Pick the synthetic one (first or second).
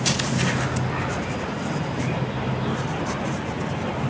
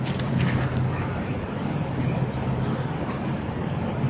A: second